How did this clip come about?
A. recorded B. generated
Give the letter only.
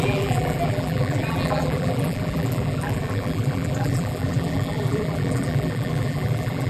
B